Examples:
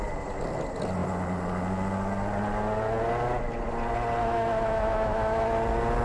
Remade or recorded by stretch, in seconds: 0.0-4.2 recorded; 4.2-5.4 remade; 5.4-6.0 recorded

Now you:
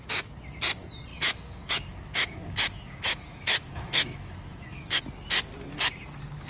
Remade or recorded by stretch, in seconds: 0.0-1.1 recorded; 1.1-5.0 remade; 5.0-6.5 recorded